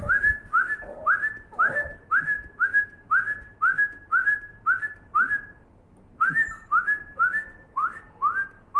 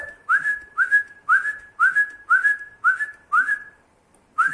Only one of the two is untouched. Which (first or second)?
first